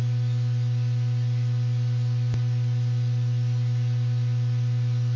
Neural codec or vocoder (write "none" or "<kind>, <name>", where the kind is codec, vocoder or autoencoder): none